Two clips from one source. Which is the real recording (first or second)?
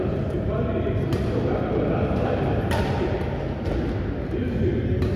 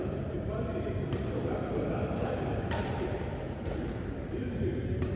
first